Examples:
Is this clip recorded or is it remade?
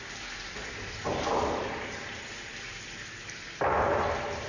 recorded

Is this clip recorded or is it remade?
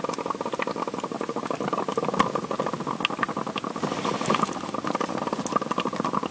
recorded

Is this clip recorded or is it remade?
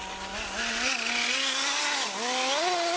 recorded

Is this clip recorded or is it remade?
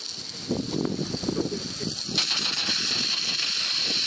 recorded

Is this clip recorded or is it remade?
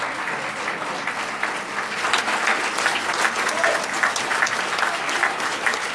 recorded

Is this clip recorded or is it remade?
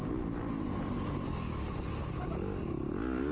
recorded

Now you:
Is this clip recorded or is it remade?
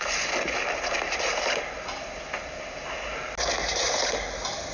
recorded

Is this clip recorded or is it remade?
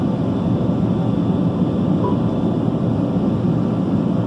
recorded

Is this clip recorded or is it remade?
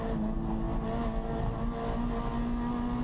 recorded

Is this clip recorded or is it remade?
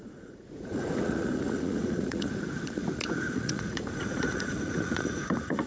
remade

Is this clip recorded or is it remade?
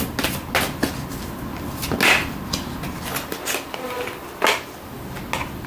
recorded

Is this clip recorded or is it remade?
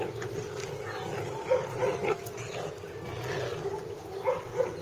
recorded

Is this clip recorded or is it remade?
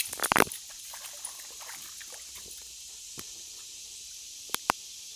remade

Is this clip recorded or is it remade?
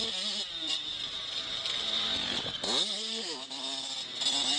recorded